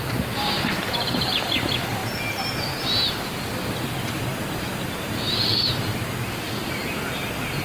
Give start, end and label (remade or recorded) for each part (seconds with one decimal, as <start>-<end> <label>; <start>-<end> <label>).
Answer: 0.0-7.6 recorded